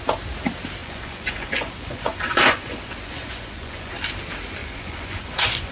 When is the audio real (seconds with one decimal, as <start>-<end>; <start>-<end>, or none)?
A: 0.0-0.8; 3.9-4.6